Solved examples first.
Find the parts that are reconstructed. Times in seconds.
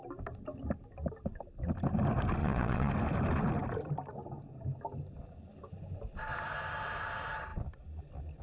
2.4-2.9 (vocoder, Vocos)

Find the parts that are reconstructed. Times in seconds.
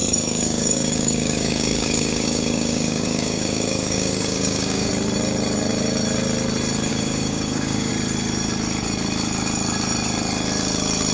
0.0-4.9 (codec, DAC); 6.9-7.9